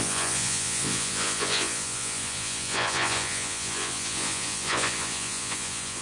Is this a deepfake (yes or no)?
yes